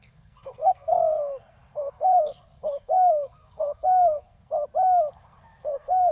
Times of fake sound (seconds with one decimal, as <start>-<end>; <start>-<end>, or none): 0.0-4.5; 5.1-6.1